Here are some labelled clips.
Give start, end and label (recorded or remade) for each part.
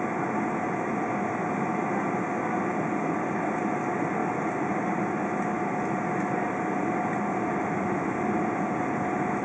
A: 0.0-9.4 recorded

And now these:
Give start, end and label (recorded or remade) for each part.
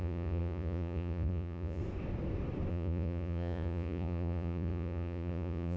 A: 0.0-1.8 remade; 1.8-2.7 recorded; 2.7-5.8 remade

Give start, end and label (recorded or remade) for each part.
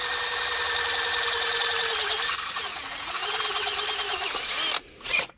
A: 0.0-2.6 recorded; 2.6-3.2 remade; 3.2-5.0 recorded; 5.0-5.4 remade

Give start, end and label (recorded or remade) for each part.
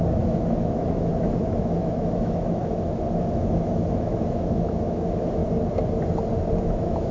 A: 0.0-5.4 remade; 5.4-6.6 recorded; 6.6-7.1 remade